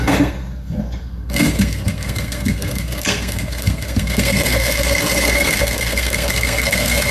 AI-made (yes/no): yes